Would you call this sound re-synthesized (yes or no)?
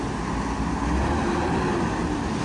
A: no